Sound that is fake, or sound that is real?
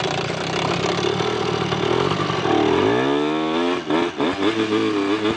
real